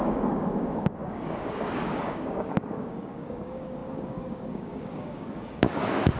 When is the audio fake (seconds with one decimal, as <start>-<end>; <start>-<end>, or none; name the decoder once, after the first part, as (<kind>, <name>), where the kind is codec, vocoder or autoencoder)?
0.0-6.2 (codec, DAC)